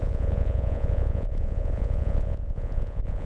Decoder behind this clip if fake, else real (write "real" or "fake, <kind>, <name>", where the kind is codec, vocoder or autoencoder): fake, vocoder, Vocos